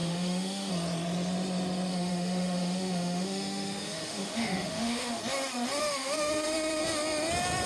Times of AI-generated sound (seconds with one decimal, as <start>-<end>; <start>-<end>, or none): 0.0-0.7; 1.9-5.2; 5.8-6.8